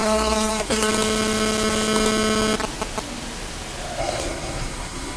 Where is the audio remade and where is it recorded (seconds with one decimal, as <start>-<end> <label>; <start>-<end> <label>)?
0.0-0.9 remade; 0.9-4.0 recorded; 4.0-5.2 remade